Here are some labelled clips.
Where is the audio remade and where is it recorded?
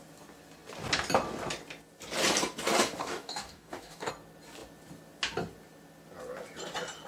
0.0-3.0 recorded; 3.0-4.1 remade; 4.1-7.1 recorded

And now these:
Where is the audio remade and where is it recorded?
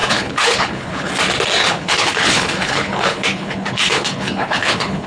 0.0-1.1 remade; 1.1-1.6 recorded; 1.6-5.1 remade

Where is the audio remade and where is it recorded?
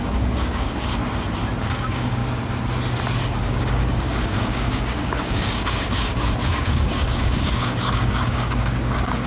0.0-1.0 remade; 1.0-1.6 recorded; 1.6-2.2 remade; 2.2-3.5 recorded; 3.5-9.3 remade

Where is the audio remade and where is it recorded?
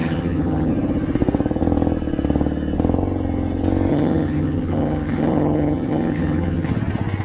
0.0-0.7 remade; 0.7-3.9 recorded; 3.9-6.7 remade; 6.7-7.2 recorded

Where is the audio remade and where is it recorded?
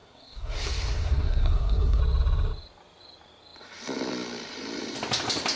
0.0-2.0 remade; 2.0-5.6 recorded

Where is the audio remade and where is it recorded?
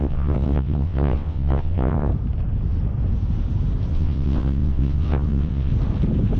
0.0-2.1 remade; 2.1-3.9 recorded; 3.9-5.7 remade; 5.7-6.4 recorded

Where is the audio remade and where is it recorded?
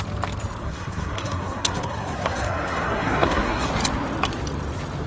0.0-0.6 recorded; 0.6-3.7 remade; 3.7-5.1 recorded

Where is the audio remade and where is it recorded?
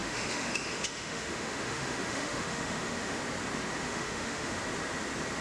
0.0-3.2 remade; 3.2-3.8 recorded; 3.8-4.6 remade; 4.6-5.4 recorded